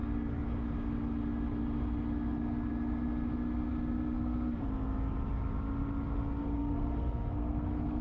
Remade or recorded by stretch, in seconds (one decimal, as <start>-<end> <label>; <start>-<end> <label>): 0.0-6.4 recorded; 6.4-8.0 remade